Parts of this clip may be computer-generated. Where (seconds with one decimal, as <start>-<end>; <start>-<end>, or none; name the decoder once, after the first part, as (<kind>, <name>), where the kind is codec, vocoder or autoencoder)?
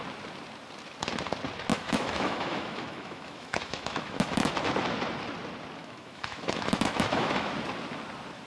1.7-4.5 (autoencoder, DAC-VAE); 5.8-7.5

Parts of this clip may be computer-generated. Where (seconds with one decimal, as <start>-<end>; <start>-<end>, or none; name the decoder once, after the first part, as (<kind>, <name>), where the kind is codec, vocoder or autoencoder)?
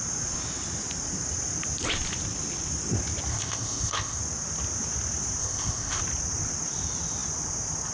3.3-4.2 (codec, ZipCodec); 5.4-6.0